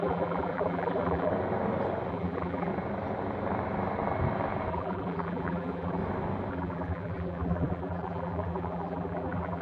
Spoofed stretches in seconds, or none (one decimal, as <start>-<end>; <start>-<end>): 0.0-1.3; 2.1-2.7; 4.7-6.0; 6.5-9.6